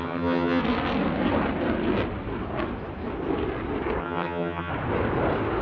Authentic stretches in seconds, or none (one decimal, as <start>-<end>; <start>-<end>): 0.6-4.0; 4.7-5.6